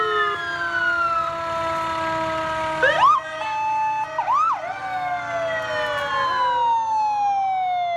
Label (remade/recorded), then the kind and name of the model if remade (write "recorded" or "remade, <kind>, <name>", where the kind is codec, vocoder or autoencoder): recorded